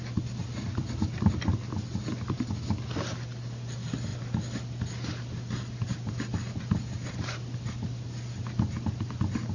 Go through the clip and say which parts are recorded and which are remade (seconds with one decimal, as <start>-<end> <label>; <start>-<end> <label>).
0.0-9.5 recorded